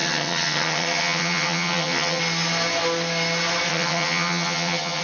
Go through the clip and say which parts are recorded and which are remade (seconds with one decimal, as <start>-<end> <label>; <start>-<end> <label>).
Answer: 0.0-2.2 remade; 2.2-3.7 recorded; 3.7-5.0 remade